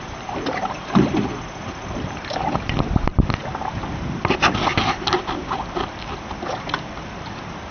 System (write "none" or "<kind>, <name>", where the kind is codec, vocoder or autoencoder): none